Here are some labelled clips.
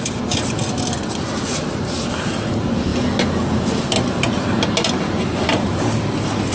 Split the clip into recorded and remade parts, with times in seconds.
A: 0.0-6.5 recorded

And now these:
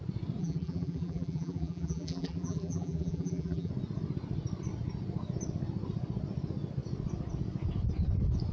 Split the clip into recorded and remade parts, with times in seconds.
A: 0.0-0.4 recorded; 0.4-3.7 remade; 3.7-8.5 recorded

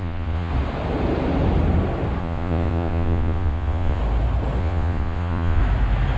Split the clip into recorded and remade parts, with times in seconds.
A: 0.0-0.5 remade; 0.5-2.2 recorded; 2.2-4.0 remade; 4.0-4.6 recorded; 4.6-5.6 remade; 5.6-6.2 recorded

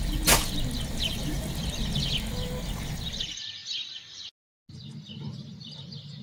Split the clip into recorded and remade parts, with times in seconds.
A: 0.0-6.2 recorded

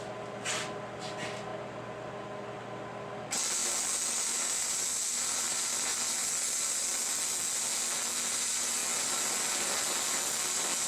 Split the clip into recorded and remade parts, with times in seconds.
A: 0.0-10.9 recorded